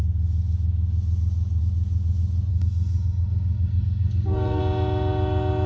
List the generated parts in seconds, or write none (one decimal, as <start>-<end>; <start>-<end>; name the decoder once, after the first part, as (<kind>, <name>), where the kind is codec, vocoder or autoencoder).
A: 2.5-4.6 (codec, SNAC)